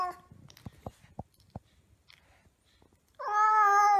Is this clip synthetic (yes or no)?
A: no